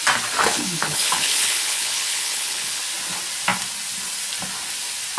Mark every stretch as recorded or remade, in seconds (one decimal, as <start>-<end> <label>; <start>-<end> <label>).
0.0-0.4 recorded; 0.4-2.8 remade; 2.8-5.2 recorded